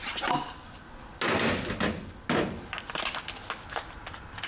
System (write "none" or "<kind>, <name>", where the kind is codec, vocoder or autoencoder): none